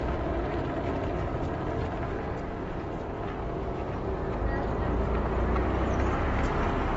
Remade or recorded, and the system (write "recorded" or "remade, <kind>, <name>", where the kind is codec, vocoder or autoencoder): recorded